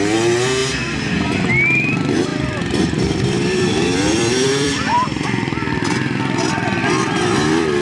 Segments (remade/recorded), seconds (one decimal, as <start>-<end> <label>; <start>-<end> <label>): 0.0-2.3 recorded; 2.3-6.2 remade; 6.2-6.8 recorded; 6.8-7.8 remade